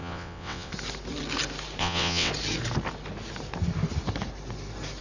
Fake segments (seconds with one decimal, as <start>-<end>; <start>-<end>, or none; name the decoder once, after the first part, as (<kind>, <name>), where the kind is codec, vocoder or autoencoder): 0.0-0.7 (vocoder, WaveNeXt); 1.8-2.3